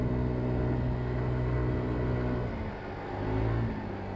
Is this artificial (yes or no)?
no